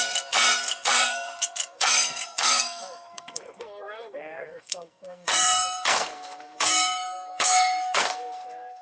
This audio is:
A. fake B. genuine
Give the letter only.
A